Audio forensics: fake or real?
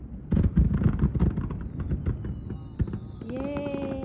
real